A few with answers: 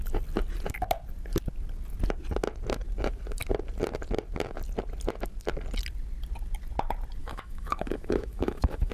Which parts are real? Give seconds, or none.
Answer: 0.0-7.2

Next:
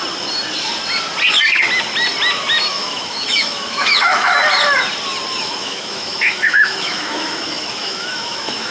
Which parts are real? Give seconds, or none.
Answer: 0.0-2.7; 4.3-5.4

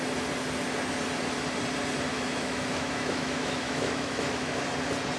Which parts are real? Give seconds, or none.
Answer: 0.0-2.1; 4.6-5.2

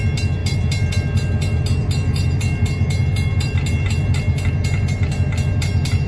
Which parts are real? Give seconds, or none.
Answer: 0.0-6.1

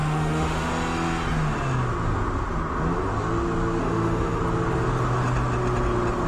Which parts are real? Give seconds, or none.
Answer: 0.7-3.8; 4.4-6.3

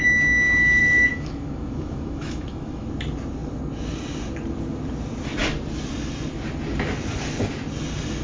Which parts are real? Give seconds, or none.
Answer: 0.0-0.8; 2.9-8.2

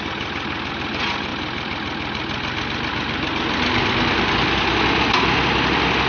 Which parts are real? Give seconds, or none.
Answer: 0.0-6.1